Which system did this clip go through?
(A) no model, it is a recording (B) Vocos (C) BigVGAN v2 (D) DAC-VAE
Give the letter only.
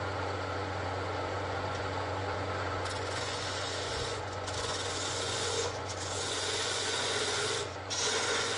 B